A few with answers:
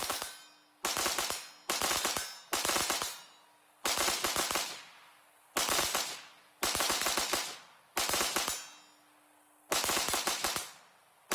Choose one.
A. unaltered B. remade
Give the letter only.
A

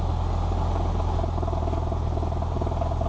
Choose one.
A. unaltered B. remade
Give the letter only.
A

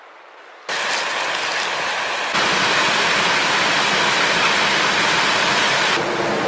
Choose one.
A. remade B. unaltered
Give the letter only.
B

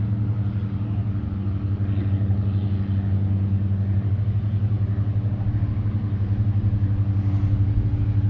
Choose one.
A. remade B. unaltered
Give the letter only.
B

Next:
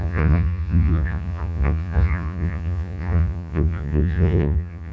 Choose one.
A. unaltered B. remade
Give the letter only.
B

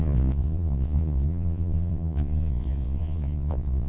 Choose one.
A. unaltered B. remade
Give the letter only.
B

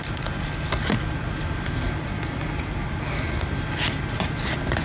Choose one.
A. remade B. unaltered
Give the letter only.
B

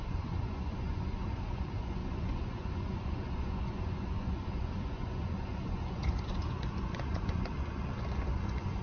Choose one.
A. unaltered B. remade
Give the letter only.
B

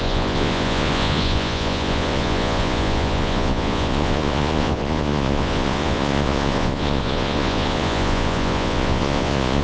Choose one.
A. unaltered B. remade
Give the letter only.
B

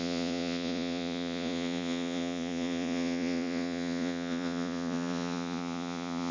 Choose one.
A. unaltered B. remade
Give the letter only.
B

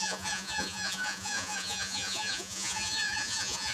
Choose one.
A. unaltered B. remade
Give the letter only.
B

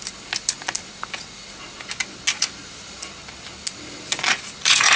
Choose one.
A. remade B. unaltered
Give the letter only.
B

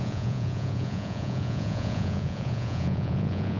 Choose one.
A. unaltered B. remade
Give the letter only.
B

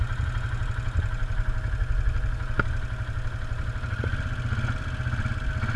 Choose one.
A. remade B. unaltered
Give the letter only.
B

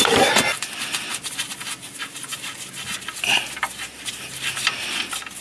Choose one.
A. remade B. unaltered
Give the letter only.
B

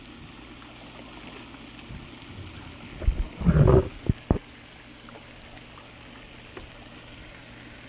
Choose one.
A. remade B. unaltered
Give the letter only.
B